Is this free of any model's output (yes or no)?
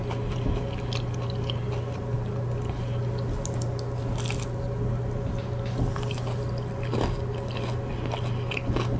yes